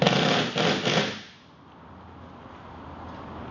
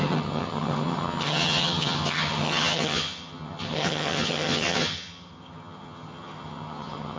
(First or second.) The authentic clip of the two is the first